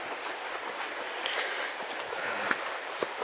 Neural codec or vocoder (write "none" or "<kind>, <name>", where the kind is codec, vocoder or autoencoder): none